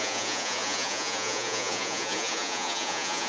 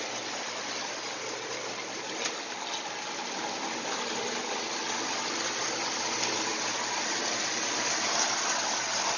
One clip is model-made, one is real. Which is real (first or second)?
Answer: second